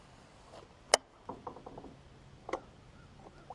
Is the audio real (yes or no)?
yes